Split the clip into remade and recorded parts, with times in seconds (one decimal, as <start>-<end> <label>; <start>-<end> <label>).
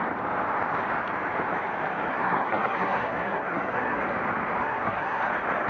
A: 0.0-2.1 recorded; 2.1-4.0 remade; 4.0-4.6 recorded; 4.6-5.3 remade; 5.3-5.7 recorded